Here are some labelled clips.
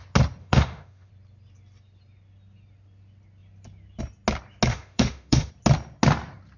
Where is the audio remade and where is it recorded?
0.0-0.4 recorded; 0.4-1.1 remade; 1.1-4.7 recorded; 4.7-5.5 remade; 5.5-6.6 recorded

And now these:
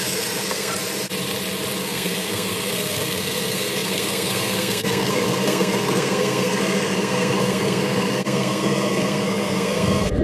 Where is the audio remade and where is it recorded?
0.0-0.7 remade; 0.7-1.8 recorded; 1.8-10.2 remade

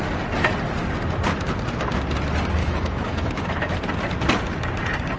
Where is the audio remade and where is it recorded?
0.0-2.6 recorded; 2.6-3.8 remade; 3.8-5.2 recorded

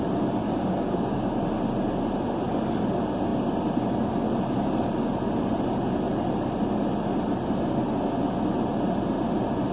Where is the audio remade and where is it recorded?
0.0-0.4 recorded; 0.4-1.4 remade; 1.4-9.7 recorded

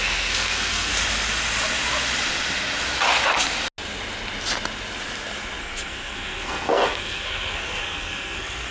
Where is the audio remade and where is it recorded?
0.0-0.9 remade; 0.9-5.6 recorded; 5.6-8.7 remade

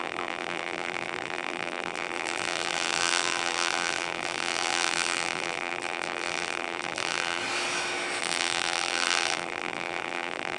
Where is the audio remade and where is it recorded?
0.0-7.4 remade; 7.4-8.2 recorded; 8.2-10.6 remade

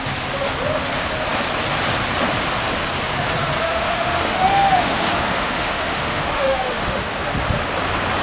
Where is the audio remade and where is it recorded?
0.0-3.6 recorded; 3.6-7.2 remade; 7.2-8.2 recorded

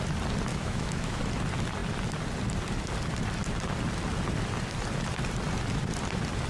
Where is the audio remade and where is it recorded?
0.0-0.5 recorded; 0.5-1.2 remade; 1.2-6.5 recorded